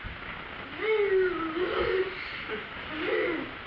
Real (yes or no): yes